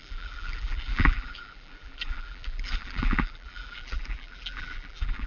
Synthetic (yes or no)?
yes